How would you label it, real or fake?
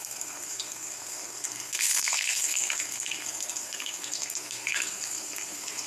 fake